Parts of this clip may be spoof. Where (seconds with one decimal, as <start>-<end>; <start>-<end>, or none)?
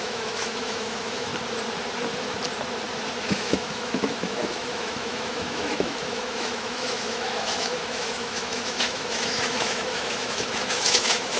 0.0-1.3; 3.2-11.4